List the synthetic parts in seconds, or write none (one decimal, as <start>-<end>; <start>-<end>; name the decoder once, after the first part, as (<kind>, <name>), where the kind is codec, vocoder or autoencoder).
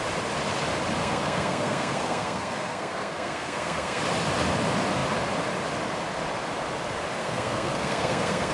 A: 1.0-4.0 (codec, SNAC); 7.2-8.5